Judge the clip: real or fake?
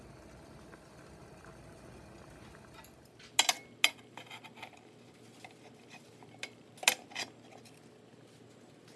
real